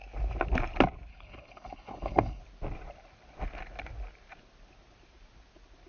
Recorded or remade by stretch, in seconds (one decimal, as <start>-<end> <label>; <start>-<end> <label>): 0.0-1.1 recorded; 1.1-2.4 remade; 2.4-5.9 recorded